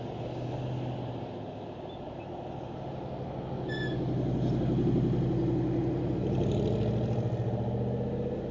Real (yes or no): yes